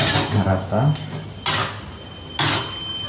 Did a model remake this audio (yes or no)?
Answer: no